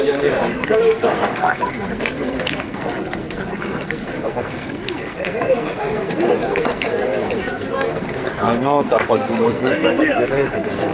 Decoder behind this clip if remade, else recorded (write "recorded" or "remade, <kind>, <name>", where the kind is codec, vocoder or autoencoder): remade, codec, SNAC